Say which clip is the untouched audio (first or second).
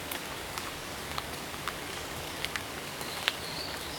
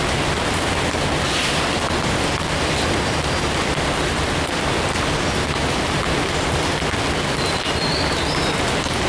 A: second